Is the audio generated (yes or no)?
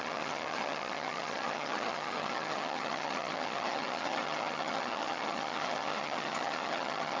yes